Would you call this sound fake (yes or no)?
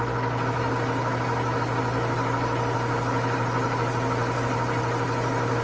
no